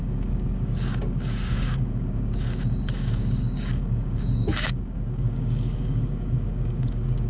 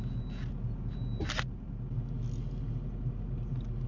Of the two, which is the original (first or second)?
second